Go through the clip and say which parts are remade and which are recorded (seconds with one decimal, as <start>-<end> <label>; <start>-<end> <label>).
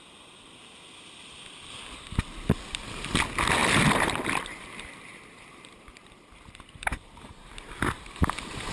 0.0-3.6 recorded; 3.6-7.5 remade; 7.5-8.7 recorded